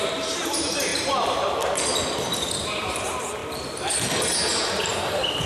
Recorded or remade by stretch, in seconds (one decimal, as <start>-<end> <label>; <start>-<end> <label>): 0.0-0.9 remade; 0.9-2.6 recorded; 2.6-3.4 remade; 3.4-4.5 recorded; 4.5-5.5 remade